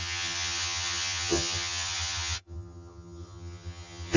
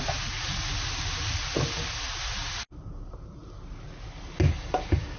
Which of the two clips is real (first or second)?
second